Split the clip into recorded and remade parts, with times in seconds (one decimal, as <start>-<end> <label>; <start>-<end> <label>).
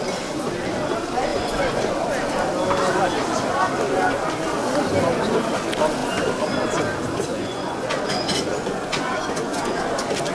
0.0-1.3 recorded; 1.3-1.8 remade; 1.8-7.3 recorded; 7.3-9.8 remade; 9.8-10.3 recorded